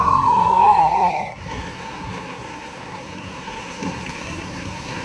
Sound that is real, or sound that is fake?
fake